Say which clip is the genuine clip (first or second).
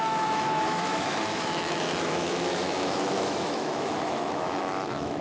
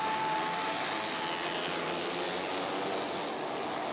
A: second